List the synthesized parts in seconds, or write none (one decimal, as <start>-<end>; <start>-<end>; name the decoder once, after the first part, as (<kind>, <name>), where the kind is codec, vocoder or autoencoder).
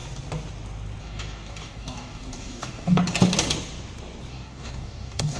1.0-3.0 (codec, DAC); 4.3-5.4